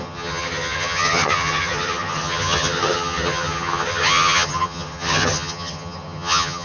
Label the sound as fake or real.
fake